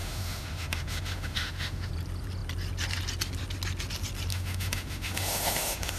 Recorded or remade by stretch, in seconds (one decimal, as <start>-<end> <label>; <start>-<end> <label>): 0.0-1.9 remade; 1.9-4.3 recorded; 4.3-6.0 remade